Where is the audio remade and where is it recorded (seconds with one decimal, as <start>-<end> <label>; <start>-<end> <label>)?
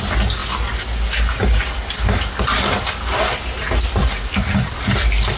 0.0-5.4 recorded